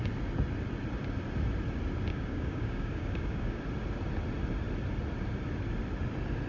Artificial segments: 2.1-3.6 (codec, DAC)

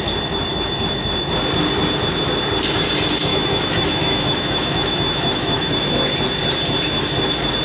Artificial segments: 3.3-5.7 (autoencoder, DAC-VAE)

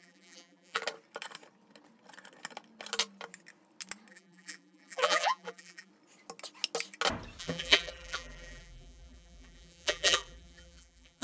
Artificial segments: 0.0-0.8 (vocoder, BigVGAN v2); 4.1-5.9; 7.4-11.2

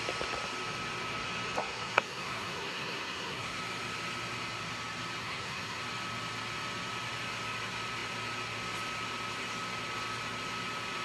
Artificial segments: 1.6-3.6 (codec, SNAC); 5.2-5.8